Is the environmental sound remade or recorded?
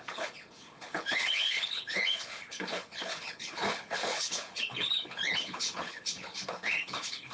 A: remade